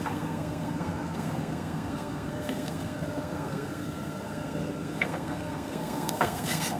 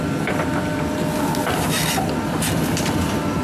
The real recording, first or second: second